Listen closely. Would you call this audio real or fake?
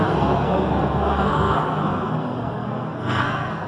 fake